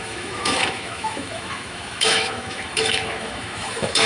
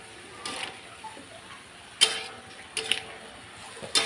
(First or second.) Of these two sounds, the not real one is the first